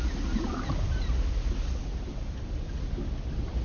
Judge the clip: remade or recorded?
recorded